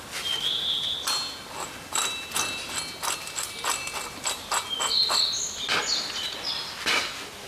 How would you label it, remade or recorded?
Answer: recorded